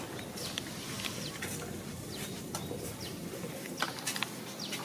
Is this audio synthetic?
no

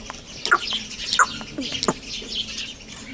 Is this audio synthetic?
no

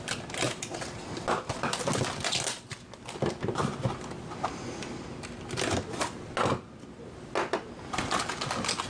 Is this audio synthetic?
no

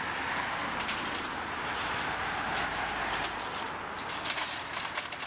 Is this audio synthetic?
no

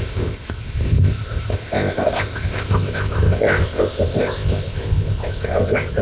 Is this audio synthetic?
yes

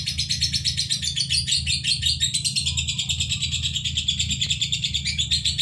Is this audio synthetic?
no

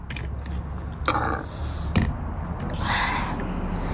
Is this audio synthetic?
no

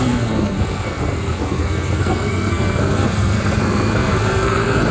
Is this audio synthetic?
yes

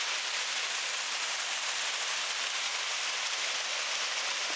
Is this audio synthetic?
no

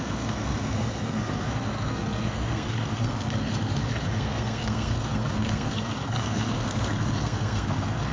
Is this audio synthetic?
yes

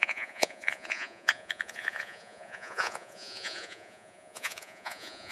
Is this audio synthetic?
yes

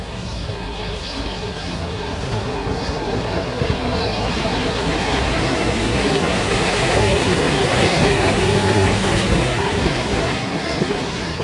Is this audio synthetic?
yes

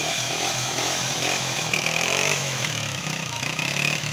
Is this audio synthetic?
yes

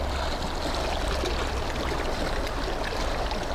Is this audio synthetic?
no